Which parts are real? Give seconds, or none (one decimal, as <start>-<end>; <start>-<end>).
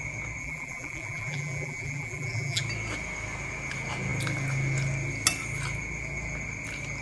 0.0-0.4; 2.6-7.0